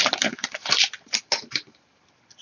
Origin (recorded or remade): recorded